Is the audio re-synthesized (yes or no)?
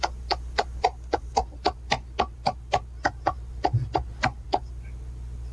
no